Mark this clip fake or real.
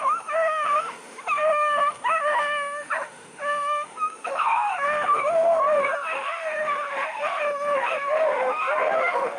fake